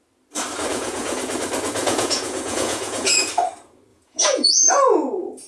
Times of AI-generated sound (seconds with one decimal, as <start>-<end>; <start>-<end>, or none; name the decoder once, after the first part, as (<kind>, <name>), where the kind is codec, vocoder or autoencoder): 0.7-1.2 (vocoder, Vocos); 1.8-3.3; 3.9-4.7